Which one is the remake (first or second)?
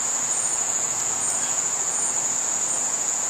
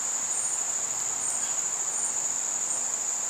first